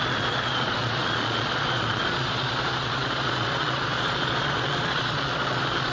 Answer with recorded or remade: remade